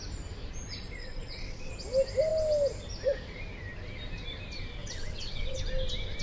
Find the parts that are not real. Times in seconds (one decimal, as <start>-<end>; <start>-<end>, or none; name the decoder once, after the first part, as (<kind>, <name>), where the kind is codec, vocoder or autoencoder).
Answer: 1.0-1.7 (vocoder, WaveNeXt); 4.8-5.6